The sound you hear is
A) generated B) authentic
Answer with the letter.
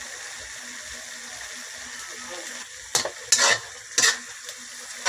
B